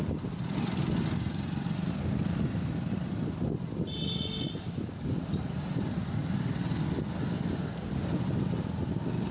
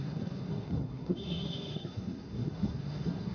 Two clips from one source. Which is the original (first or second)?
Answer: first